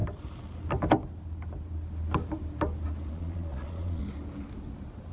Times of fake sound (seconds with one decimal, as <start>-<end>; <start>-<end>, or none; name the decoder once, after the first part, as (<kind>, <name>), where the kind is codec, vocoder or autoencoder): 3.1-4.0 (vocoder, Vocos)